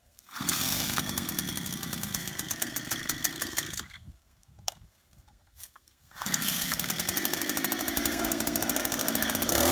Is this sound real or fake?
fake